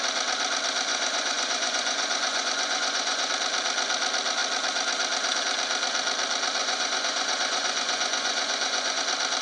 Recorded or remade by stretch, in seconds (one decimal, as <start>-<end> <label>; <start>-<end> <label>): 0.0-0.9 recorded; 0.9-3.3 remade; 3.3-6.6 recorded; 6.6-9.0 remade; 9.0-9.4 recorded